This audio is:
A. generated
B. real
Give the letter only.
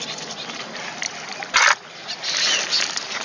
B